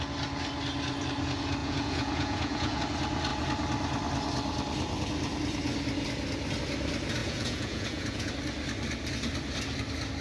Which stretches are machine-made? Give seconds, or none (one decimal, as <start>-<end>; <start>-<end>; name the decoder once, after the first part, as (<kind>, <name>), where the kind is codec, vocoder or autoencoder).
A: 1.6-2.8 (vocoder, Vocos); 7.2-8.3